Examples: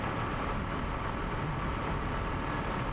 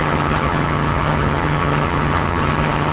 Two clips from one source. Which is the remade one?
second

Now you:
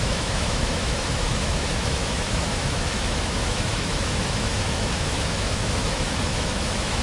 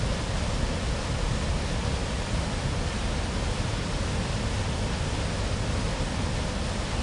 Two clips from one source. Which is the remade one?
first